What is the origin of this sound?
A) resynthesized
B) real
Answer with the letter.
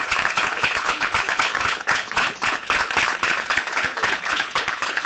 A